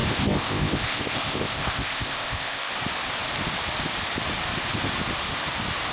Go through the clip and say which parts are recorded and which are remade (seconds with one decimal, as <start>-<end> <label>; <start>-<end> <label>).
0.0-2.7 remade; 2.7-5.9 recorded